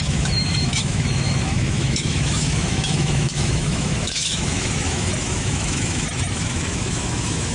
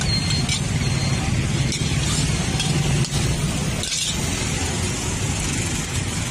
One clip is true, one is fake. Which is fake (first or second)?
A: first